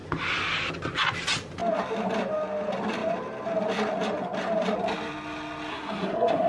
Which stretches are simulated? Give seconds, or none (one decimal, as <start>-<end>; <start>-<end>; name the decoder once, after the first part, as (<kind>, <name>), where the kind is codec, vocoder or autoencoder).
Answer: 5.7-6.5 (codec, SNAC)